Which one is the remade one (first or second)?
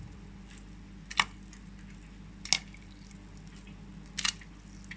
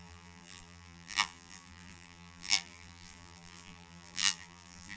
second